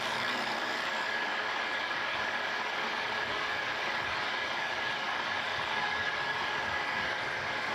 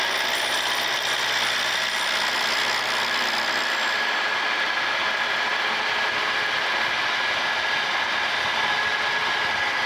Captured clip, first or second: second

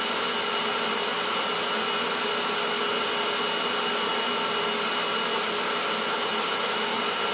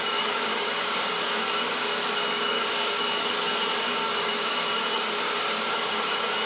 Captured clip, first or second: first